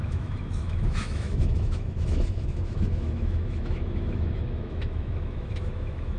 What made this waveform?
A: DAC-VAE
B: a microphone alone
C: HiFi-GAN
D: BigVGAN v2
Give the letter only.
A